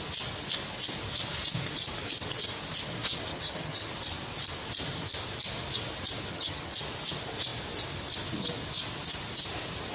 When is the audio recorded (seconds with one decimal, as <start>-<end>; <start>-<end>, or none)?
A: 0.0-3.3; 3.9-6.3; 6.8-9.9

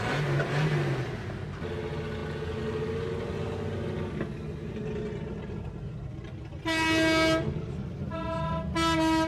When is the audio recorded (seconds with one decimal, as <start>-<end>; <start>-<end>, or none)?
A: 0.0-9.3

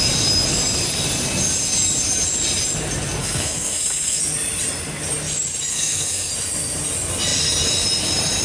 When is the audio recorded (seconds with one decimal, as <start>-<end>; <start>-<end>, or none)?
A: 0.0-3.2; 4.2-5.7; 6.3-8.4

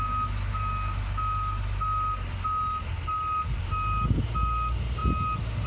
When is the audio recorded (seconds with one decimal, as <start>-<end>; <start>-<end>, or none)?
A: 0.0-5.0

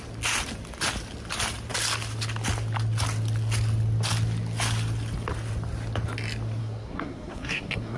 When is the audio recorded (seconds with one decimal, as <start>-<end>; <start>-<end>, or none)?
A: 0.0-6.6

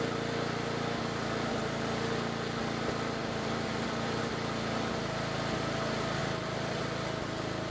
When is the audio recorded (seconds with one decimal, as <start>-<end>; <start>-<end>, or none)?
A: 0.0-3.2; 4.2-6.2; 6.8-7.7

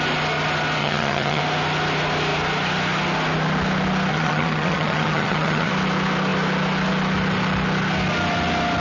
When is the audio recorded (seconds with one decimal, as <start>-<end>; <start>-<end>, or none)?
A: 0.0-0.8; 1.4-4.1; 5.7-8.8

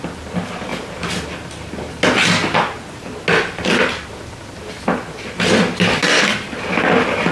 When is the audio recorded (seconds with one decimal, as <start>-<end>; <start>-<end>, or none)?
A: 0.0-7.3